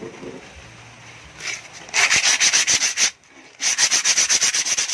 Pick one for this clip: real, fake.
real